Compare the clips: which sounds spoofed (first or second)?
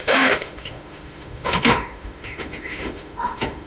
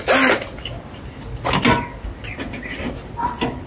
first